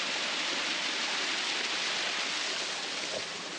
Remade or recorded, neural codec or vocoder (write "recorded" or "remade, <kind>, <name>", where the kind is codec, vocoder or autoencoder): recorded